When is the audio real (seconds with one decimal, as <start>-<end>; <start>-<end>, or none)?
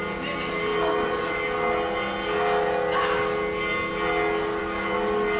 0.0-5.4